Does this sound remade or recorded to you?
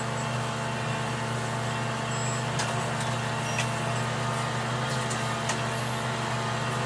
recorded